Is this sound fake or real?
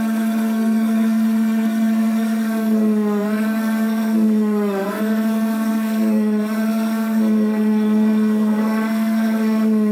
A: fake